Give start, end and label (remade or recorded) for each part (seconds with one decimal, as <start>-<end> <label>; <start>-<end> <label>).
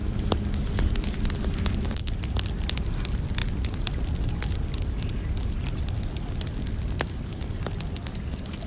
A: 0.0-8.7 recorded